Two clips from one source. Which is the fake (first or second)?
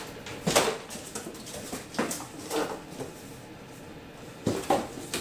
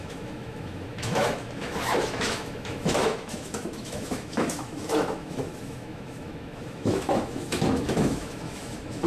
second